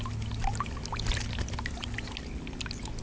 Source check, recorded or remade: recorded